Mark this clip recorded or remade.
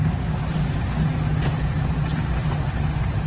recorded